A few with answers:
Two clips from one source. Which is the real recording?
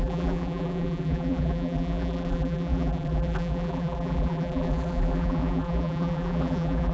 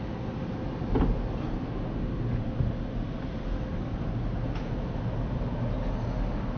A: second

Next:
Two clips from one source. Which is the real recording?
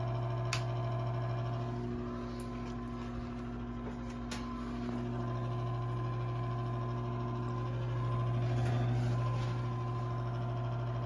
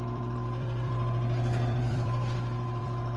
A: first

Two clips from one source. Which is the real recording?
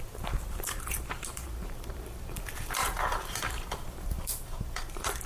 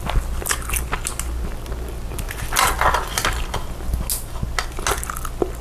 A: second